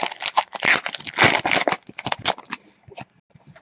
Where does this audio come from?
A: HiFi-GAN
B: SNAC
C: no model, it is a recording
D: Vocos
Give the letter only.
C